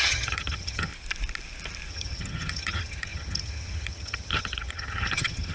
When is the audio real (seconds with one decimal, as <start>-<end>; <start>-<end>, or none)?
0.9-1.9